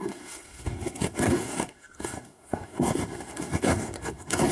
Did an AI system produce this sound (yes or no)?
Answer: yes